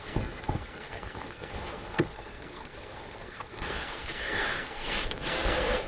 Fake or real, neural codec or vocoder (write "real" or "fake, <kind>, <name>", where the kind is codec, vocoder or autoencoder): fake, codec, SNAC